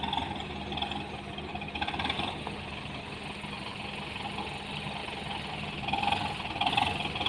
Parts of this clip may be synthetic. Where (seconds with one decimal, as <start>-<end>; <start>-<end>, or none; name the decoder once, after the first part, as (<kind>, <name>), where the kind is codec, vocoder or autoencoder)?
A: 1.5-2.8 (vocoder, BigVGAN v2); 5.0-6.7

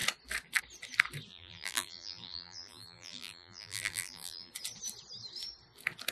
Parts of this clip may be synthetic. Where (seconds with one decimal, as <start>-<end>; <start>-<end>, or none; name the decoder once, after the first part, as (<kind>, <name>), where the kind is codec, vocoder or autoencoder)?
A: 1.3-4.5 (vocoder, BigVGAN v2)

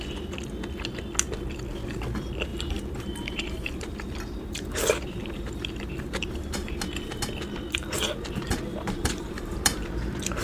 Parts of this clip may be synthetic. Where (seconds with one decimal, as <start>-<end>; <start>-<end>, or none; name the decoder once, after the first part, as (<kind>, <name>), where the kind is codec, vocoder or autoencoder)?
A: 2.5-6.7 (vocoder, BigVGAN v2); 8.7-10.4

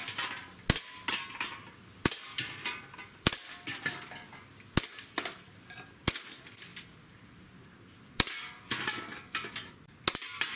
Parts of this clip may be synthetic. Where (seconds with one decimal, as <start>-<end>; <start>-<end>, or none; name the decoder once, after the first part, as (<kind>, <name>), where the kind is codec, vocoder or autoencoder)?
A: none

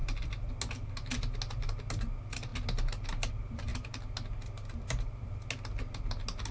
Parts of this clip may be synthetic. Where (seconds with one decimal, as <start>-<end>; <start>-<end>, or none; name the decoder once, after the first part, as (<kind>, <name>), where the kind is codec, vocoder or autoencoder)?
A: 0.0-0.5 (vocoder, BigVGAN v2)

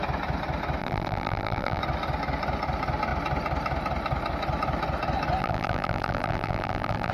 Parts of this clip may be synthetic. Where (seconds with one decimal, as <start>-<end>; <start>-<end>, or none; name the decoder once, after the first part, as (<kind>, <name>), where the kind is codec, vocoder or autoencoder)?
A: 0.8-1.8 (vocoder, BigVGAN v2); 5.4-7.1